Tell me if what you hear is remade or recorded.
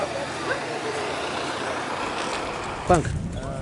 recorded